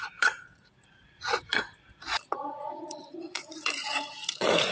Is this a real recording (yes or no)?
no